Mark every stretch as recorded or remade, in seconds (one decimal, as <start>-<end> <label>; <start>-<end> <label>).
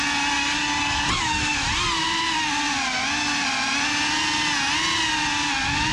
0.0-5.9 recorded